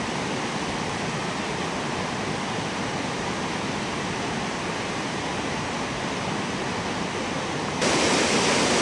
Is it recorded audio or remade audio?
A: recorded